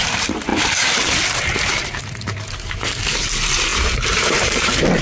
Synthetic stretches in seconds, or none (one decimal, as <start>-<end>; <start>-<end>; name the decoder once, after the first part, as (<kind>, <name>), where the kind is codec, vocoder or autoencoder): 0.0-5.0 (vocoder, BigVGAN v2)